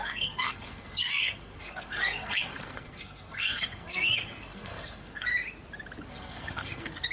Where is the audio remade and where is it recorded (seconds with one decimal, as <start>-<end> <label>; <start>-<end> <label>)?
0.0-5.3 remade; 5.3-6.1 recorded; 6.1-7.1 remade